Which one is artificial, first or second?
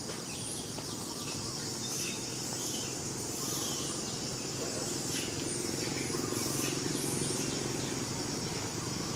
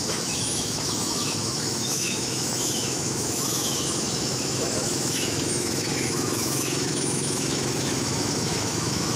second